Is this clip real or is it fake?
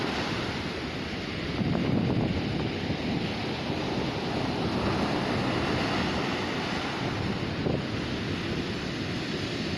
real